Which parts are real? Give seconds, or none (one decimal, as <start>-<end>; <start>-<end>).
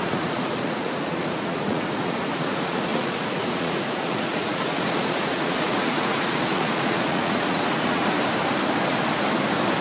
8.0-9.8